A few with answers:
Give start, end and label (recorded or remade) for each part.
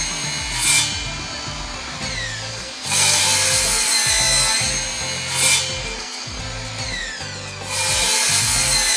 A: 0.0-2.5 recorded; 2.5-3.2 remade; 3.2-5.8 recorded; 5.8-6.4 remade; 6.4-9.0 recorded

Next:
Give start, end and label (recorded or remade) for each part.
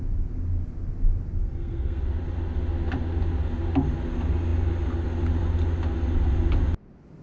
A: 0.0-1.4 recorded; 1.4-2.0 remade; 2.0-7.2 recorded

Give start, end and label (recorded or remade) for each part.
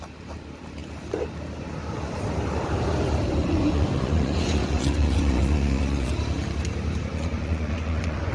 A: 0.0-3.4 recorded; 3.4-6.1 remade; 6.1-7.1 recorded; 7.1-8.3 remade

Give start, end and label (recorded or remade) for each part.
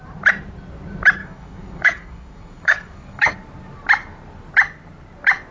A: 0.0-1.2 recorded; 1.2-3.3 remade; 3.3-5.5 recorded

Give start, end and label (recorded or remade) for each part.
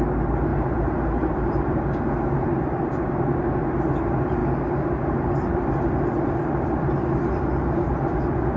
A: 0.0-0.5 recorded; 0.5-1.8 remade; 1.8-4.4 recorded; 4.4-6.9 remade; 6.9-8.6 recorded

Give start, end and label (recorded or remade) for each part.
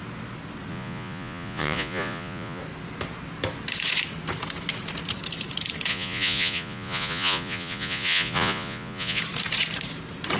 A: 0.0-0.7 recorded; 0.7-2.6 remade; 2.6-5.9 recorded; 5.9-9.2 remade; 9.2-10.4 recorded